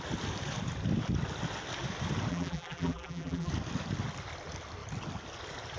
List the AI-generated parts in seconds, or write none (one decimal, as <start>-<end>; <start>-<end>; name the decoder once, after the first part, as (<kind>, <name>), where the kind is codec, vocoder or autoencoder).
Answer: 2.3-3.5 (vocoder, BigVGAN v2)